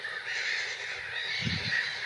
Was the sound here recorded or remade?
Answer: remade